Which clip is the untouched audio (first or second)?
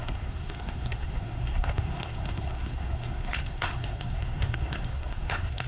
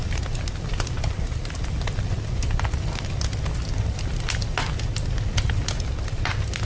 second